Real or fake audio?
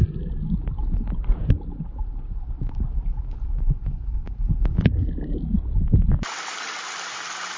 real